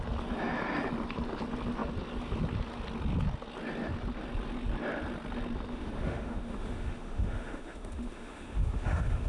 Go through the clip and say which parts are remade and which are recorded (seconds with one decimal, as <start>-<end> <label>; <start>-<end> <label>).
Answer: 0.0-5.7 recorded; 5.7-9.3 remade